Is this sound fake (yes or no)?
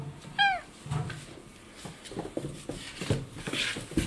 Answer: no